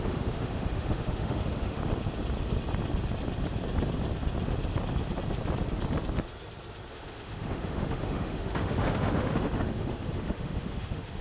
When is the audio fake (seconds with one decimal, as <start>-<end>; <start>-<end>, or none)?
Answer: 0.0-1.8; 6.9-11.2